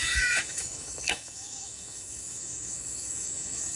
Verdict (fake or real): fake